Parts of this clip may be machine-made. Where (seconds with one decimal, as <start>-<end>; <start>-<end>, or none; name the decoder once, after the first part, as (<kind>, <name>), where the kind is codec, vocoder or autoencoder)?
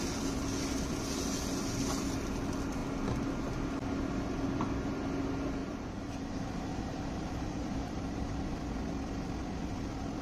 5.6-6.3 (vocoder, BigVGAN v2); 6.7-8.5